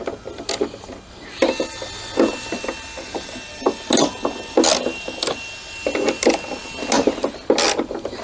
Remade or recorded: recorded